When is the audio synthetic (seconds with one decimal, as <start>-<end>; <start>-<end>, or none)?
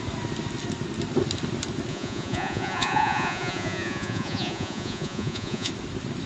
1.9-5.7